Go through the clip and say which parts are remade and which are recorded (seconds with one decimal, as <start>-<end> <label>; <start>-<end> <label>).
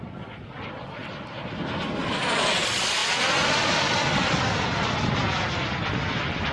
0.0-6.5 recorded